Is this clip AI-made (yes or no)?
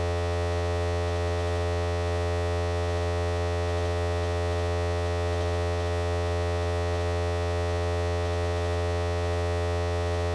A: yes